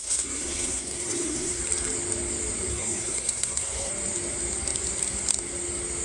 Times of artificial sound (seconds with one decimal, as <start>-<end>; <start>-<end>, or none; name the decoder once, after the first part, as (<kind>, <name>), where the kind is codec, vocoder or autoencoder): 0.0-1.6 (codec, SNAC); 2.7-3.9